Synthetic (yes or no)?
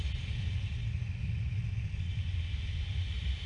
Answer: no